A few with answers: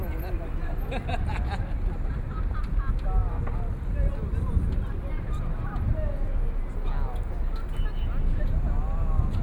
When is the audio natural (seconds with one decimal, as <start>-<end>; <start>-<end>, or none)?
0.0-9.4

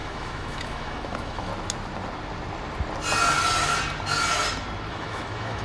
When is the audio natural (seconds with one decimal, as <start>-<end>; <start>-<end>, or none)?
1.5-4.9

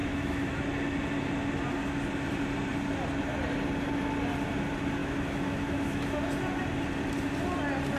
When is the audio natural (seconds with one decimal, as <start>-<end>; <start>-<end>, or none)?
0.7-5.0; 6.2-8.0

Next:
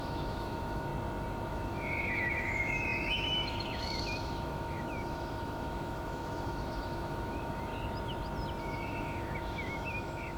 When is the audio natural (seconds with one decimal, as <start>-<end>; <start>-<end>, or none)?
0.9-1.5; 7.7-8.6